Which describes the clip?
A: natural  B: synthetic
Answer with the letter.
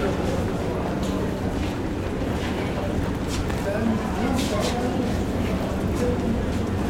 A